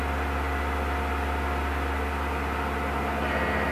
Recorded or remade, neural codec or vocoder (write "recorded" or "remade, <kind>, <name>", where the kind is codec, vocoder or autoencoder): recorded